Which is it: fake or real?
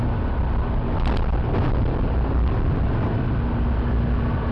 real